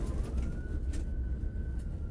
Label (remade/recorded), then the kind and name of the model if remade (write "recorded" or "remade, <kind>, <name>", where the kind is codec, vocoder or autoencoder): recorded